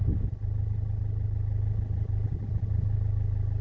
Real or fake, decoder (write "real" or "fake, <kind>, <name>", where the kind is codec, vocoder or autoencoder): fake, vocoder, BigVGAN v2